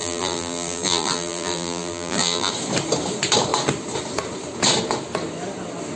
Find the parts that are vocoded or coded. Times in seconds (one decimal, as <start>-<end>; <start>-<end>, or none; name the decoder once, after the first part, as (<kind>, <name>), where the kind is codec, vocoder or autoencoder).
0.0-2.5 (vocoder, BigVGAN v2)